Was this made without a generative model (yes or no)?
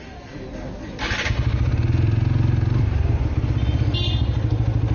yes